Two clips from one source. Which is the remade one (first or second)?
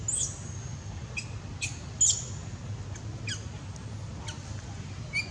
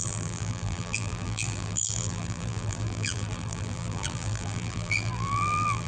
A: second